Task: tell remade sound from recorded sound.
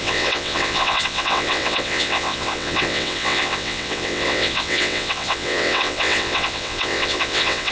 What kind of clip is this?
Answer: remade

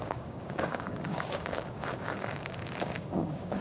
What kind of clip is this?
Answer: remade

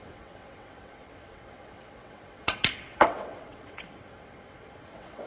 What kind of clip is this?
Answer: remade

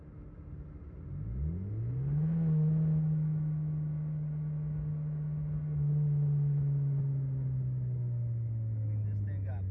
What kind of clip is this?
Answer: recorded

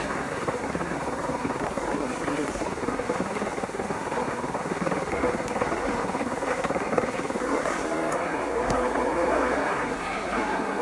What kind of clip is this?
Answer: remade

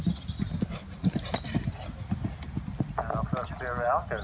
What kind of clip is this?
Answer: recorded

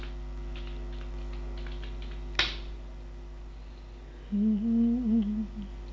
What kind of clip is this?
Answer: recorded